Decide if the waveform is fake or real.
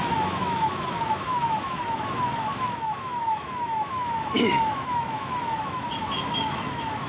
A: fake